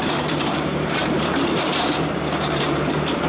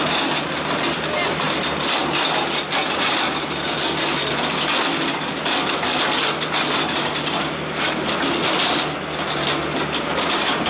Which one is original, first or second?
second